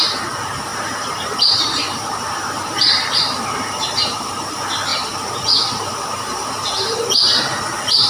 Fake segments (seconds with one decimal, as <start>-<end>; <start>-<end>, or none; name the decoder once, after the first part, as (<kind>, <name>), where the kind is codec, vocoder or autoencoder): 0.7-4.3 (vocoder, BigVGAN v2); 4.9-6.7